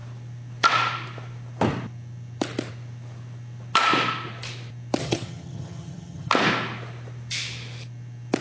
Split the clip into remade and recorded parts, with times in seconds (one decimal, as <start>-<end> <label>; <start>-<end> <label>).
0.0-5.0 recorded; 5.0-6.3 remade; 6.3-8.4 recorded